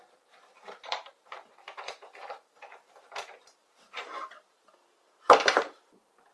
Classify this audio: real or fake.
fake